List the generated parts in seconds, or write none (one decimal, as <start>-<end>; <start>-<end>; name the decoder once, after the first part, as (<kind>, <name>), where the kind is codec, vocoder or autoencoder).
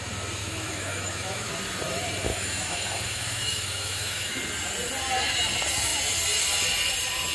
0.4-1.5 (autoencoder, DAC-VAE); 2.3-4.4